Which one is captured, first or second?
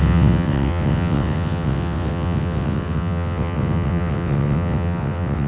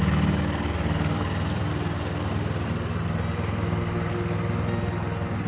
second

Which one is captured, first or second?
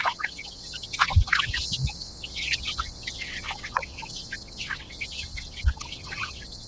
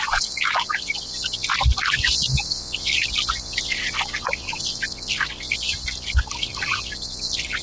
second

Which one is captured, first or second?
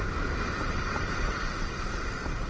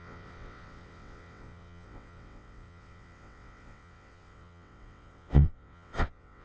first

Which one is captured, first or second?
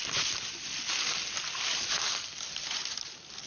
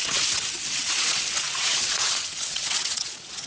first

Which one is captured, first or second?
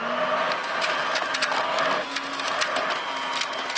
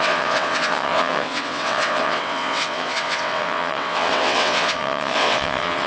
first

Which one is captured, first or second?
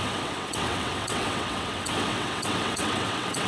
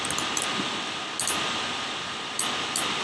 second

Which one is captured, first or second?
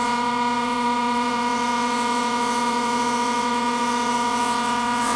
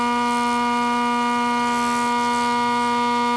second